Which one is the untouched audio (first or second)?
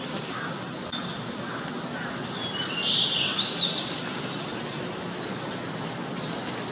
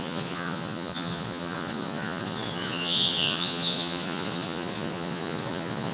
first